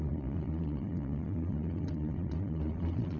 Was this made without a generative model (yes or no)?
no